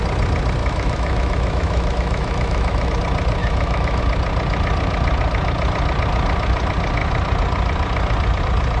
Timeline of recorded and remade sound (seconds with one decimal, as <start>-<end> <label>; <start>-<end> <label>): 0.0-0.6 recorded; 0.6-2.9 remade; 2.9-3.4 recorded; 3.4-4.0 remade; 4.0-8.8 recorded